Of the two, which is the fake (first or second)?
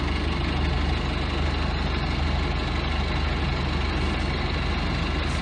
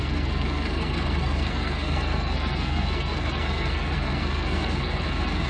second